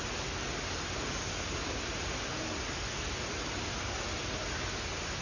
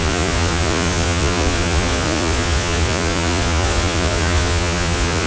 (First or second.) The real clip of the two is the first